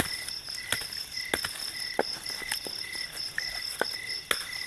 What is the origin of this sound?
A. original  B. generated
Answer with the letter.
A